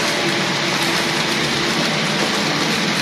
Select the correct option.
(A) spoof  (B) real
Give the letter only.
B